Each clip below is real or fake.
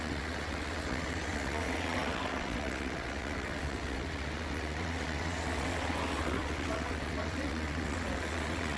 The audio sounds fake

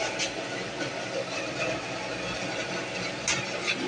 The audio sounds real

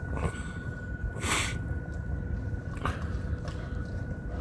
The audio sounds real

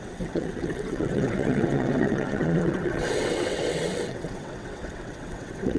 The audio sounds fake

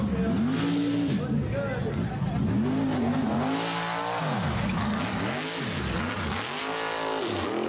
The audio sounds real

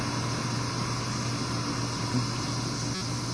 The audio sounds real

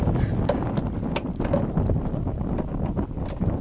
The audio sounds real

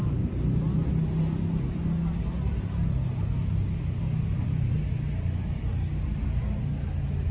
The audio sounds real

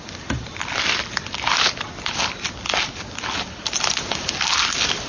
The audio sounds real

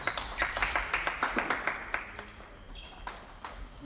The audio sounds real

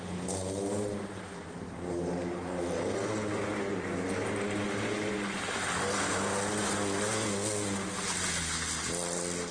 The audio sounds real